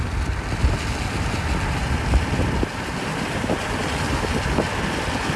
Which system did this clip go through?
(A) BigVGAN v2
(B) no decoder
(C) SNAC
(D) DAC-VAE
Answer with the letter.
B